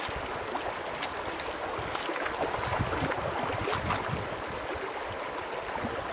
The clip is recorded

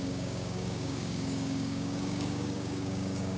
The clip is remade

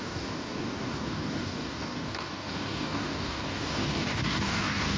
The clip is remade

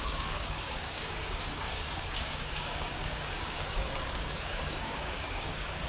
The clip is remade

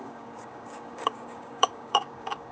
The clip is remade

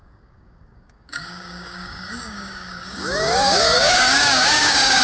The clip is remade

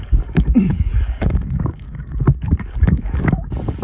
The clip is remade